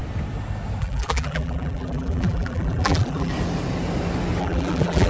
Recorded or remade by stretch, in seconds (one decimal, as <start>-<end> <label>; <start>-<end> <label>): 0.0-0.8 recorded; 0.8-3.3 remade; 3.3-4.4 recorded; 4.4-5.1 remade